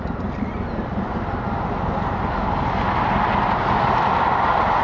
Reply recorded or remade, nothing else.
recorded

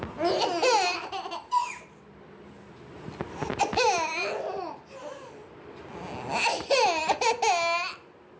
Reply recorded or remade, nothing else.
recorded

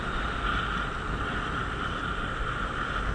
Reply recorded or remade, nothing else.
recorded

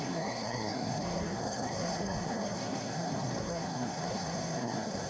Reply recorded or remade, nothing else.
remade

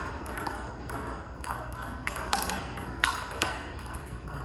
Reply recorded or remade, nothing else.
remade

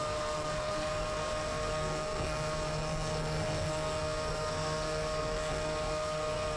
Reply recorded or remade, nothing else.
remade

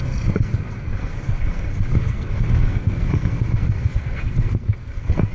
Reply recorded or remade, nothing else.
remade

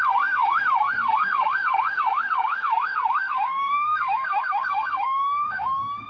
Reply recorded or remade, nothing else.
remade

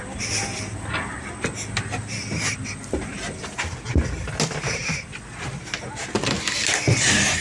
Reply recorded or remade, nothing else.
recorded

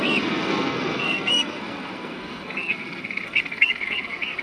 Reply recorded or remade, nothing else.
remade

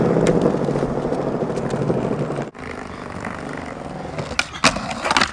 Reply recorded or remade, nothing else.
recorded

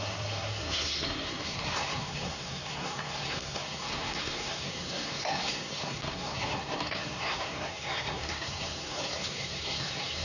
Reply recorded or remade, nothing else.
remade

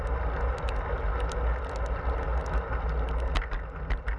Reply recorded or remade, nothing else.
recorded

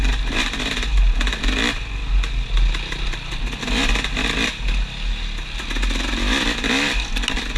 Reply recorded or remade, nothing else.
recorded